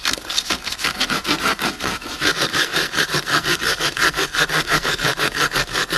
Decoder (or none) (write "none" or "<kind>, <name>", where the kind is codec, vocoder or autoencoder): codec, SNAC